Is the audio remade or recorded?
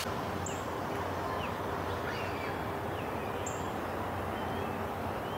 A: recorded